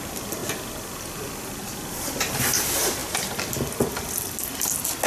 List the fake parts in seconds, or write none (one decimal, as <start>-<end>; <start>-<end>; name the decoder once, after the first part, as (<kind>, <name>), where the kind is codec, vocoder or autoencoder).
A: none

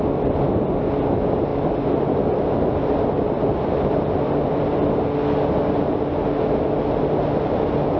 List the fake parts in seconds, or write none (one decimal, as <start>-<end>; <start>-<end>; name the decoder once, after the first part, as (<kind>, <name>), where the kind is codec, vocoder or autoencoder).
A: none

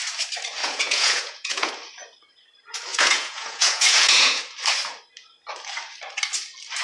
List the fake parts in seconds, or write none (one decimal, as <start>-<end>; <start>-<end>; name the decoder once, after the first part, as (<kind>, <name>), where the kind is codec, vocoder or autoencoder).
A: 0.6-1.7 (vocoder, Vocos); 2.9-4.4

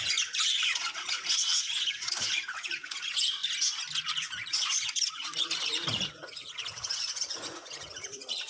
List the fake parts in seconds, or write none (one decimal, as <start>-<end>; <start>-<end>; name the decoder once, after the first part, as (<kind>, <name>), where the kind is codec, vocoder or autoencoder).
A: 0.0-3.4 (vocoder, Vocos); 4.0-8.5

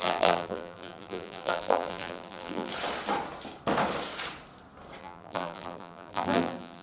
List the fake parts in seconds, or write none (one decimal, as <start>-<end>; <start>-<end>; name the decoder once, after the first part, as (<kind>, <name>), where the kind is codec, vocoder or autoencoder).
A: 0.0-2.7 (vocoder, BigVGAN v2); 5.0-6.8

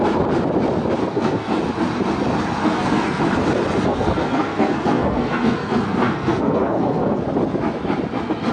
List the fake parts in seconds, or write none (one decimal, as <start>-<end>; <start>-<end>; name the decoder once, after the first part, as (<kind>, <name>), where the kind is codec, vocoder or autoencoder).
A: 1.0-1.6 (codec, SNAC); 2.6-3.2; 3.9-7.2